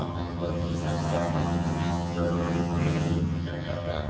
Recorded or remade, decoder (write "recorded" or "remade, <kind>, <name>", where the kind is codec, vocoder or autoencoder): remade, vocoder, HiFi-GAN